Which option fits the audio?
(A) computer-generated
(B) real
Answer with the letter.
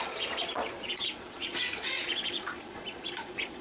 A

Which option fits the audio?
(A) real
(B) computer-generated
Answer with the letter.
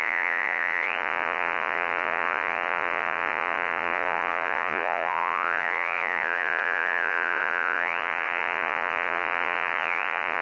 B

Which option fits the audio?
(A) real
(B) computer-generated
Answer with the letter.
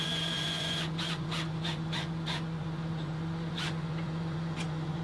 B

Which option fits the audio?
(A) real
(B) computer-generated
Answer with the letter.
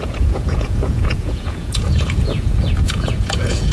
B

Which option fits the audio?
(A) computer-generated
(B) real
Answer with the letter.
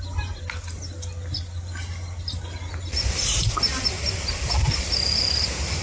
B